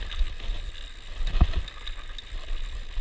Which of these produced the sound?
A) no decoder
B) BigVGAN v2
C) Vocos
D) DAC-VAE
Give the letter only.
A